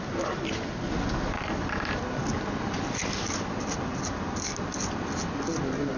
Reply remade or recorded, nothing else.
recorded